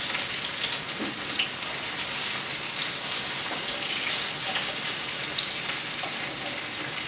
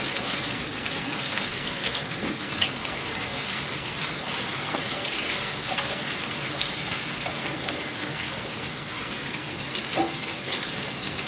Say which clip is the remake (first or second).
second